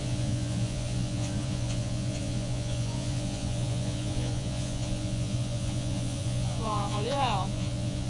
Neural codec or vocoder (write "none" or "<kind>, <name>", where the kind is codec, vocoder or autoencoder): vocoder, Vocos